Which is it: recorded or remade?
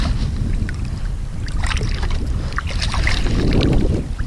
recorded